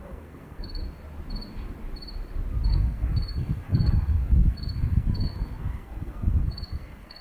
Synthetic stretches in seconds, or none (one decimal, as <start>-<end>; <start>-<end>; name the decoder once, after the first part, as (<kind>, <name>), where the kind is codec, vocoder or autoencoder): 0.0-0.8 (codec, SNAC); 2.7-7.2